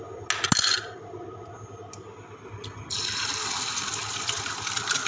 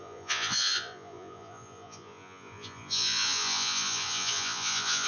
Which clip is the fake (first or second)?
second